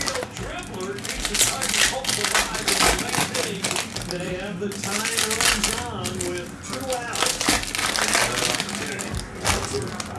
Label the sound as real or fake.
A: real